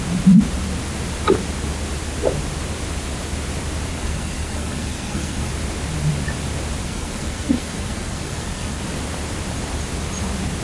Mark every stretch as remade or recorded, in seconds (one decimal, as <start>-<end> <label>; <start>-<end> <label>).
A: 0.0-3.9 recorded; 3.9-5.5 remade; 5.5-6.8 recorded; 6.8-8.8 remade; 8.8-10.6 recorded